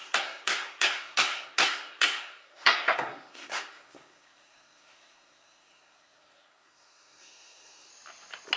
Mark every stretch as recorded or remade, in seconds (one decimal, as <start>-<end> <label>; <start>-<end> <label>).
0.0-7.9 remade; 7.9-8.6 recorded